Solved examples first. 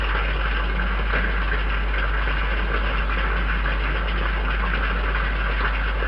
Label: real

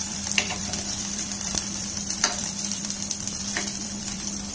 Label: fake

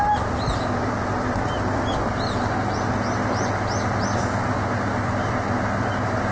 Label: real